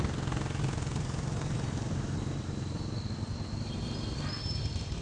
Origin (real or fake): real